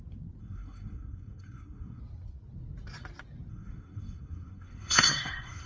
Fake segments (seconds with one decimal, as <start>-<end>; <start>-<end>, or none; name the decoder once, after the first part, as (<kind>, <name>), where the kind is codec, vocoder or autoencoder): 0.4-2.0 (codec, SNAC); 3.5-5.7